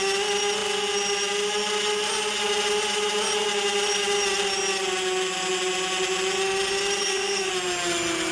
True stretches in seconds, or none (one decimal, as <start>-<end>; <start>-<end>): 0.0-7.0; 7.5-8.3